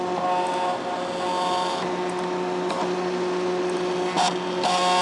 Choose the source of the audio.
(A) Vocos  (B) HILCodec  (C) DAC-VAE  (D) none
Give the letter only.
D